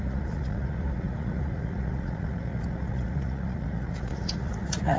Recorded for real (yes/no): no